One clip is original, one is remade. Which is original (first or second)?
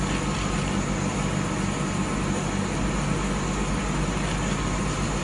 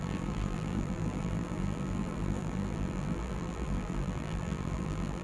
first